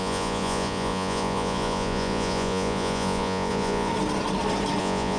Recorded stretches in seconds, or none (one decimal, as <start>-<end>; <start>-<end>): 3.9-4.8